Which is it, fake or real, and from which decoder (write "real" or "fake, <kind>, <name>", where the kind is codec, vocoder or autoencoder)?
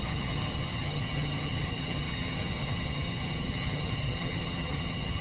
fake, vocoder, HiFi-GAN